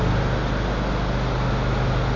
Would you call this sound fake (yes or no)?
no